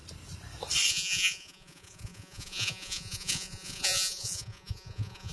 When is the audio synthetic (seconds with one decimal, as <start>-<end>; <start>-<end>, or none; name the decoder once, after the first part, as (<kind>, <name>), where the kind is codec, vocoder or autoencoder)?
0.9-5.3 (vocoder, Vocos)